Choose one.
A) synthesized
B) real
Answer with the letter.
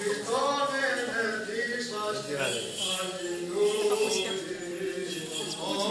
B